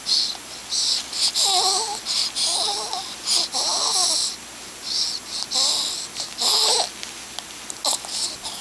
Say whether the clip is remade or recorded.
recorded